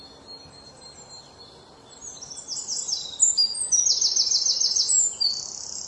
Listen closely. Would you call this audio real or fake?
real